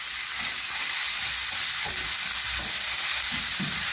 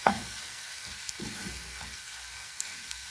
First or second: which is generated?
second